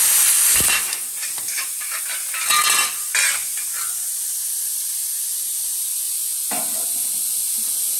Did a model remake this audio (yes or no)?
no